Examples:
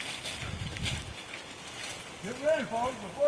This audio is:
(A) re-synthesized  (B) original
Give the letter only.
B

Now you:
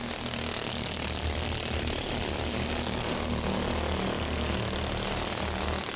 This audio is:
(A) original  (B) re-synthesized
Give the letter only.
A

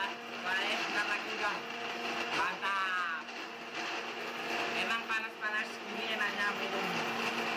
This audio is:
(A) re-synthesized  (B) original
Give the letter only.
B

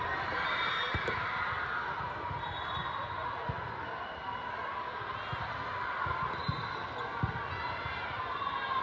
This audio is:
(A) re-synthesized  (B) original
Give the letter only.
B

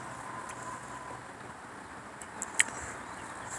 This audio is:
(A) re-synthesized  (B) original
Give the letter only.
A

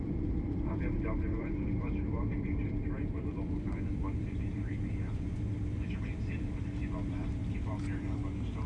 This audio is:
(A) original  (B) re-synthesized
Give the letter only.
B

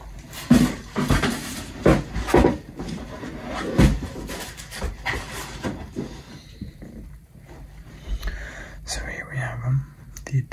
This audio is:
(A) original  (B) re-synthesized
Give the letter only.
B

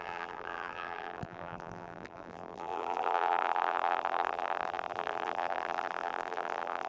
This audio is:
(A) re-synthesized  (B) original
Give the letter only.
A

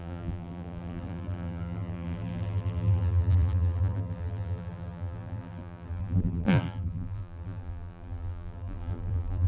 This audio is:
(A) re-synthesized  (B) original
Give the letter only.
A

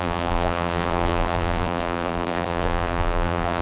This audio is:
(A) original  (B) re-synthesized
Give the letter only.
B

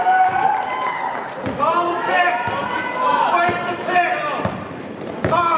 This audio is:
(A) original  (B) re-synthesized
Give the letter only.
B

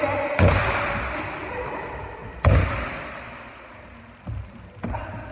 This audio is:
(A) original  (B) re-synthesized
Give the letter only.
A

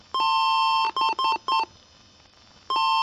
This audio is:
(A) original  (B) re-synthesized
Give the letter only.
A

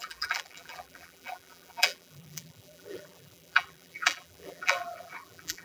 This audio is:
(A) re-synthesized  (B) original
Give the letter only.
A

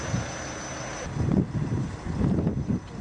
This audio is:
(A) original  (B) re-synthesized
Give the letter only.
A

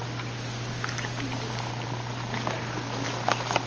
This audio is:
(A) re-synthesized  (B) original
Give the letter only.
B